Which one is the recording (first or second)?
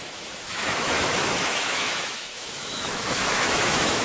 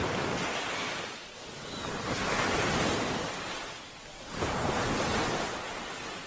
second